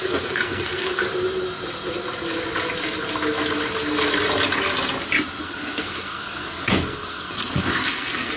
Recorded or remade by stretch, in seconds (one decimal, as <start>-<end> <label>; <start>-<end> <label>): 0.0-1.0 remade; 1.0-5.4 recorded; 5.4-8.4 remade